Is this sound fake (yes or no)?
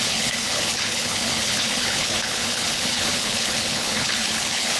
yes